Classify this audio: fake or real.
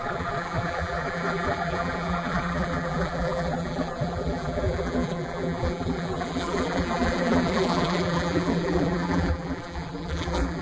fake